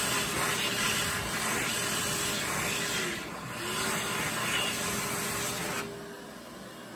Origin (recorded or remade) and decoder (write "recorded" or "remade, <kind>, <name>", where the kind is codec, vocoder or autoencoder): recorded